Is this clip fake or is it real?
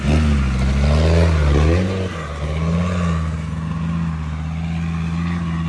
real